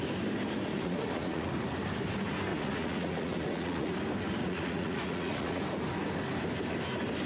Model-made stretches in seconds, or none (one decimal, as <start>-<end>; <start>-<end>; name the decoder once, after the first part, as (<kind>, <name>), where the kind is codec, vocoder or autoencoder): 0.7-1.5 (vocoder, Vocos); 2.5-3.9; 4.4-5.6